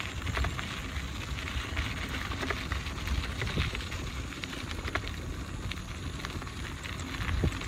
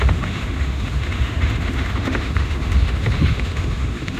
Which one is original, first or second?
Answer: first